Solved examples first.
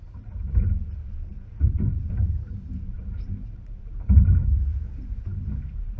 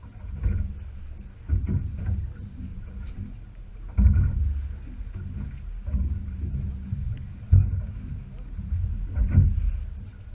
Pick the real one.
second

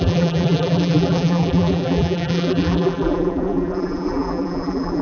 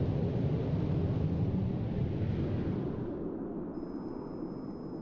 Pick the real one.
second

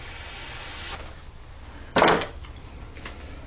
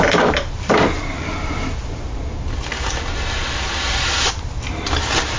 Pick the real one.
first